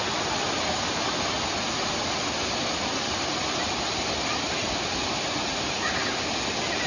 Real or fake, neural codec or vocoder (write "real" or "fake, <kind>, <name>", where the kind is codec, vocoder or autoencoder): real